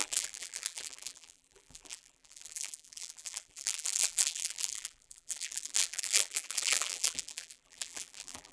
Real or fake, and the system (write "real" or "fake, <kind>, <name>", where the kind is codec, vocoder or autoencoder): fake, vocoder, BigVGAN v2